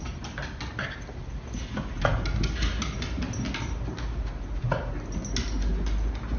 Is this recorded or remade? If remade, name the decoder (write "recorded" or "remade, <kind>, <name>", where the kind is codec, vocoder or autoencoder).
recorded